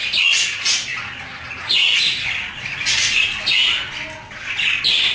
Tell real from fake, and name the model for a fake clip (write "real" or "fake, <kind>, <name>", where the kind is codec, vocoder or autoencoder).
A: real